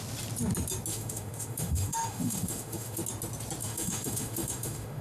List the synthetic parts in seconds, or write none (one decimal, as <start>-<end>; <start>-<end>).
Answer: 0.9-3.0; 3.6-5.0